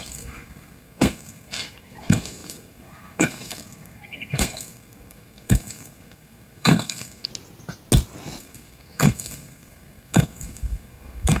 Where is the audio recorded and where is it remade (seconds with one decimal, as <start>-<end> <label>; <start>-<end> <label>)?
0.0-7.3 remade; 7.3-8.4 recorded; 8.4-11.4 remade